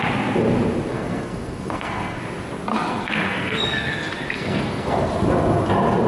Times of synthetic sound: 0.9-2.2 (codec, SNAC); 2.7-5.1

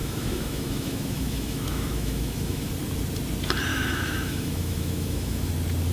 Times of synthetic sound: 0.0-2.7 (autoencoder, DAC-VAE); 3.7-5.5

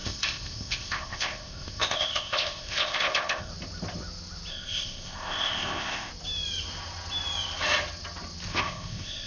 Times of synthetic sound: 0.0-3.5 (codec, ZipCodec); 4.5-6.1; 8.5-9.3

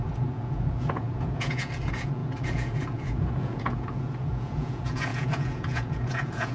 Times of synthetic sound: 0.0-6.5 (vocoder, Vocos)